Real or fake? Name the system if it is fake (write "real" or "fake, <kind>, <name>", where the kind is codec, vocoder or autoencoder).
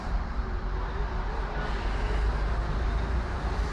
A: fake, vocoder, BigVGAN v2